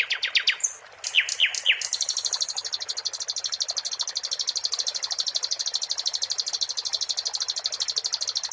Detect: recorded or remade recorded